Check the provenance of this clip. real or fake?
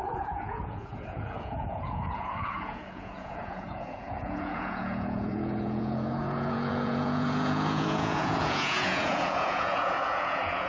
fake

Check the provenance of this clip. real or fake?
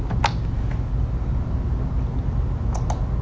real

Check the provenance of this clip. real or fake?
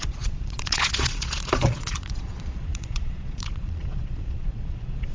fake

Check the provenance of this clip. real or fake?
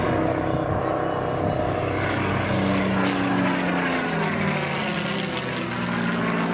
real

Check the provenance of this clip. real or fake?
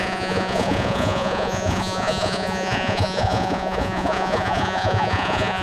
fake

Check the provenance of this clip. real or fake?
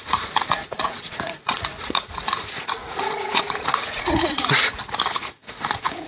fake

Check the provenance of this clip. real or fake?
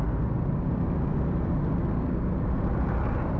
real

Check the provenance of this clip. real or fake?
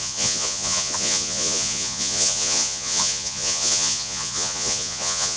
fake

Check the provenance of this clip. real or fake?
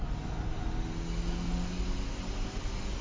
real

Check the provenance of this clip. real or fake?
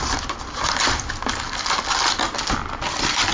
real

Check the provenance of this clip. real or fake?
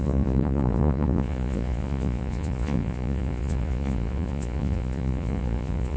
fake